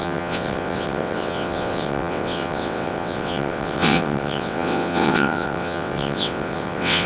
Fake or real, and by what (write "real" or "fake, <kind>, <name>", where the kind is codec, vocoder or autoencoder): fake, vocoder, WaveNeXt